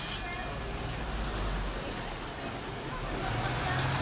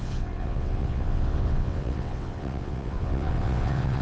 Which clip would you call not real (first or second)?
second